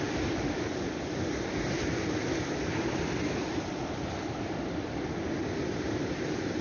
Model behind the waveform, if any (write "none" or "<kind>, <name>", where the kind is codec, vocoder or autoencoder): vocoder, BigVGAN v2